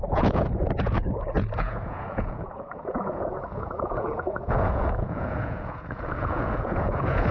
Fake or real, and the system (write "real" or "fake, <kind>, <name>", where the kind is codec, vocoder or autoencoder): fake, vocoder, Vocos